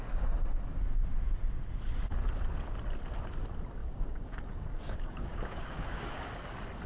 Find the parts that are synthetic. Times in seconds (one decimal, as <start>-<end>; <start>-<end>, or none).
3.8-6.3